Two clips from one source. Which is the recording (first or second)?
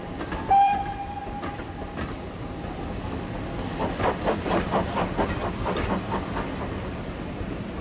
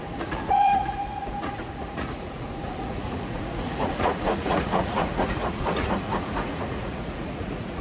first